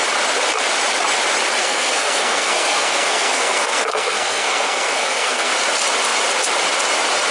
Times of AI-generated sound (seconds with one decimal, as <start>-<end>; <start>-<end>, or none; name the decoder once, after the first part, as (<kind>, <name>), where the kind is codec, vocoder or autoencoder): 1.6-5.5 (codec, SNAC)